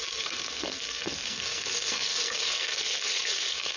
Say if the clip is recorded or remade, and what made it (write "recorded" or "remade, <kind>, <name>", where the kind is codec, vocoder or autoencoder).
remade, codec, SNAC